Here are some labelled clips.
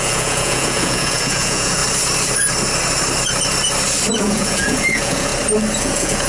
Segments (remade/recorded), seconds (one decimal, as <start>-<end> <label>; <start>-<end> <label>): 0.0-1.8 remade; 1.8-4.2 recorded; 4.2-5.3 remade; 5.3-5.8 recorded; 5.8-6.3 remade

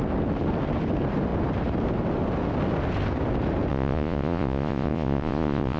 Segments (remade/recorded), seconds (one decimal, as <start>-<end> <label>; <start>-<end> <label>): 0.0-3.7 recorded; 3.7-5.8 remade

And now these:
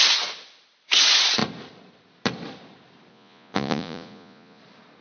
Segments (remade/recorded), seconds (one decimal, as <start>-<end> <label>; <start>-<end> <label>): 0.0-3.1 recorded; 3.1-4.6 remade; 4.6-5.0 recorded

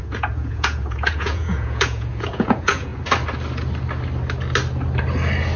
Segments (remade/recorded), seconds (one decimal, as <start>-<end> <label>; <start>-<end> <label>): 0.0-2.9 remade; 2.9-5.6 recorded

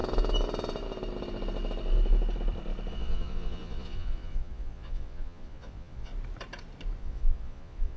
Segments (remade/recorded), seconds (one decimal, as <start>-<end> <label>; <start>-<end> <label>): 0.0-2.9 recorded; 2.9-6.1 remade; 6.1-7.0 recorded; 7.0-8.0 remade

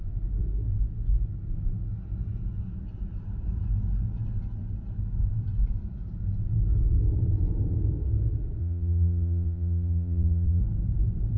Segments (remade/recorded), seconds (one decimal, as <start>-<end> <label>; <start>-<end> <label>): 0.0-8.6 recorded; 8.6-10.6 remade; 10.6-11.4 recorded

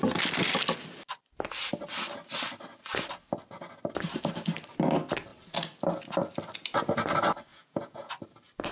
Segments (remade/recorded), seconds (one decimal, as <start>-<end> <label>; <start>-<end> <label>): 0.0-7.5 recorded; 7.5-8.1 remade; 8.1-8.7 recorded